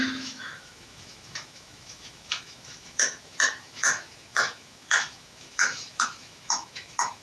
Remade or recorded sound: remade